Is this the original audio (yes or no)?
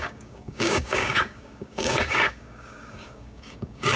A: no